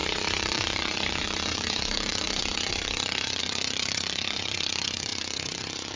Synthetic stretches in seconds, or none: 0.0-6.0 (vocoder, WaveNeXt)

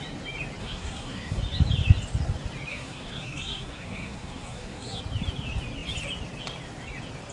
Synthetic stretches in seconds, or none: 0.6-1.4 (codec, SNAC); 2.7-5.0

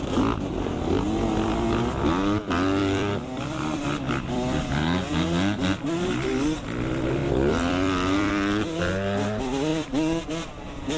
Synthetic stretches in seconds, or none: 2.8-4.6 (vocoder, BigVGAN v2); 7.2-8.3; 9.7-10.2

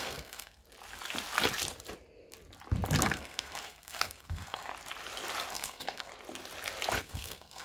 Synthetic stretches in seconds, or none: 0.0-0.6 (codec, SNAC); 3.0-4.7; 5.5-6.1; 7.0-7.6

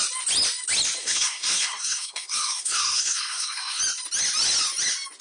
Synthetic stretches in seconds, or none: 1.0-3.8 (codec, SNAC)

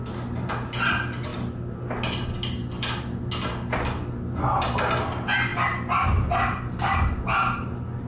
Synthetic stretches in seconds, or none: none

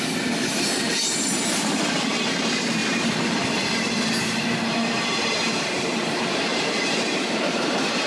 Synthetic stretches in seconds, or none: 0.0-8.1 (vocoder, BigVGAN v2)

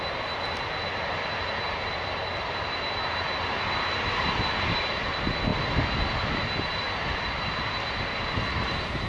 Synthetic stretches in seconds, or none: none